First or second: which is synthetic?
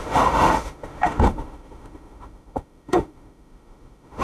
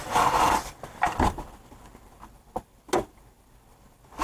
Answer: first